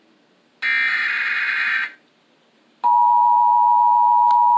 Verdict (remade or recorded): recorded